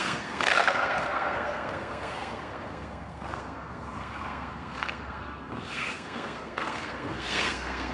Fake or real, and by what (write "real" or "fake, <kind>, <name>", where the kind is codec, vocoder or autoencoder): fake, codec, SNAC